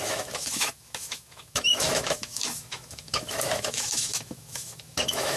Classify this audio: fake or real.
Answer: fake